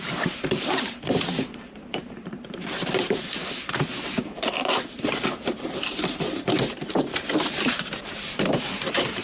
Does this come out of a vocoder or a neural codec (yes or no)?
yes